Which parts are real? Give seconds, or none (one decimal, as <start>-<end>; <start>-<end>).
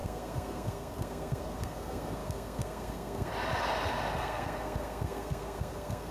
3.3-4.2